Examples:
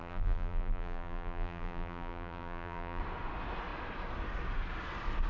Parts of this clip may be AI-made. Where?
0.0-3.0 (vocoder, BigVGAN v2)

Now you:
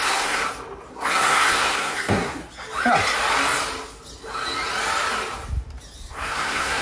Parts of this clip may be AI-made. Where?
0.0-0.4 (codec, SNAC); 0.9-2.4; 6.1-6.8